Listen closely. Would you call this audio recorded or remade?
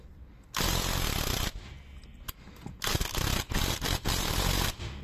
recorded